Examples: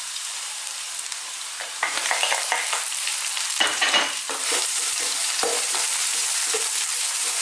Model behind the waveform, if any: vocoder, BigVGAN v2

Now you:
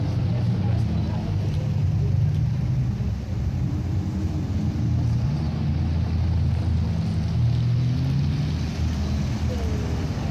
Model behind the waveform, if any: none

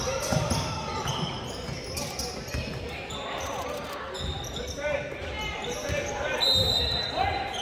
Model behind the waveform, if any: none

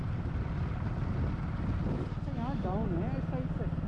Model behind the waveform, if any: none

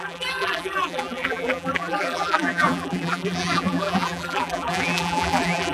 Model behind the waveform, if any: vocoder, BigVGAN v2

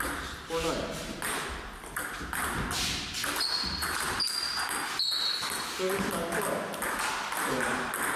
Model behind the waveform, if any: none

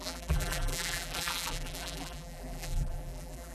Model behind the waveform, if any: vocoder, BigVGAN v2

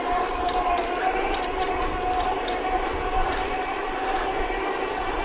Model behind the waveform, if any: vocoder, BigVGAN v2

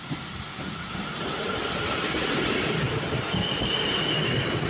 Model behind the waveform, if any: none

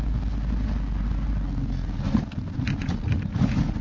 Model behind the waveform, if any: none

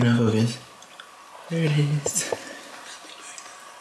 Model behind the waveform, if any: none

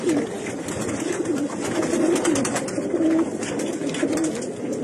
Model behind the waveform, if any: none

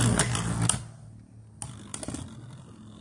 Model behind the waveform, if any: none